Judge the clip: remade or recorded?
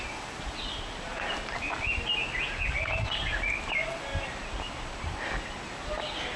recorded